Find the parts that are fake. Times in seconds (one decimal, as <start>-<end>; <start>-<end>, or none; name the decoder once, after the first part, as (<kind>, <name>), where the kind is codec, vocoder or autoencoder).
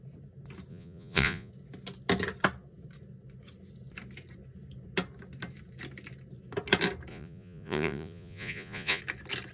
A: 0.7-1.5 (vocoder, Vocos); 7.1-9.0